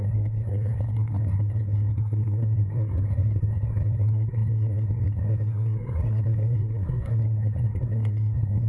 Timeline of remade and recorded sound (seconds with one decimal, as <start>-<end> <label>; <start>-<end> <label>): 0.0-8.7 remade